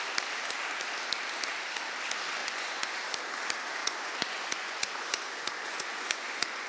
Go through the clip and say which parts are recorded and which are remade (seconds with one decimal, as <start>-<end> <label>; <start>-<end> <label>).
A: 0.0-2.4 recorded; 2.4-3.0 remade; 3.0-3.8 recorded; 3.8-6.7 remade